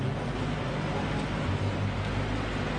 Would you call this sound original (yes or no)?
yes